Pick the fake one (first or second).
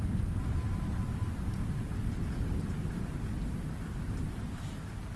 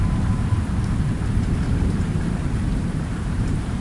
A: second